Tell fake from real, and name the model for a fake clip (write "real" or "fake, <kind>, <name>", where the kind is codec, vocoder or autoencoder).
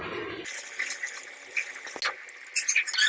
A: real